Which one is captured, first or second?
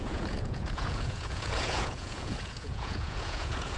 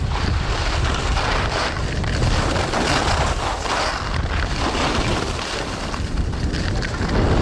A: second